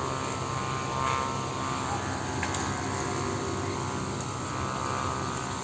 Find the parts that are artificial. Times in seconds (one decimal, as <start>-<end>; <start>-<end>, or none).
none